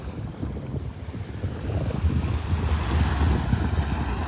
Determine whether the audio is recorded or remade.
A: recorded